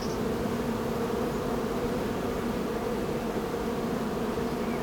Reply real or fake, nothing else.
real